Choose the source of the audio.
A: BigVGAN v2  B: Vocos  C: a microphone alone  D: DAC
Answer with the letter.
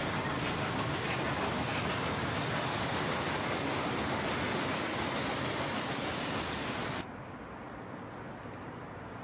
C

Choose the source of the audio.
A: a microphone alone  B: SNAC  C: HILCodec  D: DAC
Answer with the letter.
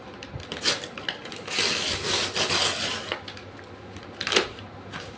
A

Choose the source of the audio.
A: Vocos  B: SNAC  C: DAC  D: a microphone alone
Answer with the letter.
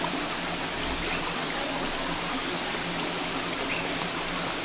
D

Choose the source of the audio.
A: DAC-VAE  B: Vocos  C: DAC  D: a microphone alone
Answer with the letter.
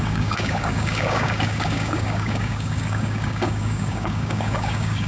C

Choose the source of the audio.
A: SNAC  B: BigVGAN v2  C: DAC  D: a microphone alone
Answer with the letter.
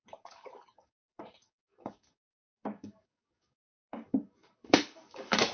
C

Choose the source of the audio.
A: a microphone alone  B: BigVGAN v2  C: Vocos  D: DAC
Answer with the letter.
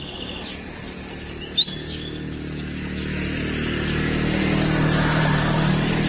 A